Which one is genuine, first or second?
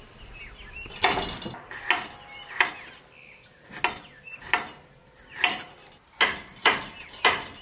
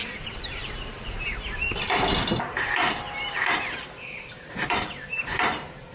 first